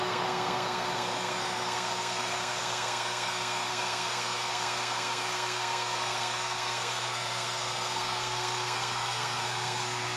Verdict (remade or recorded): remade